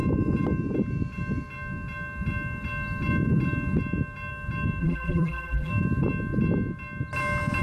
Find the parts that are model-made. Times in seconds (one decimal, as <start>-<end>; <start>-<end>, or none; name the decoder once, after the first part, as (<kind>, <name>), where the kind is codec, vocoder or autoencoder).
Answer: 4.8-5.7 (vocoder, BigVGAN v2)